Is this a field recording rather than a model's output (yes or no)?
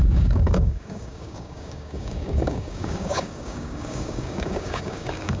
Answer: no